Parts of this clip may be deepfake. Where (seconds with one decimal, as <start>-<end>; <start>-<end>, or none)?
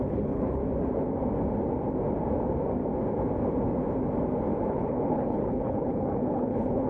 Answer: 0.0-0.6; 4.7-6.9